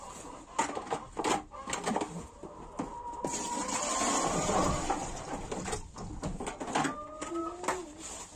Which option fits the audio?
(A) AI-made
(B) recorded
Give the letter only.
B